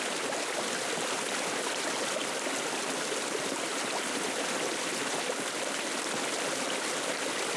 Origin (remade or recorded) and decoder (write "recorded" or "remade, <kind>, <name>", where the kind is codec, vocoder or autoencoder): recorded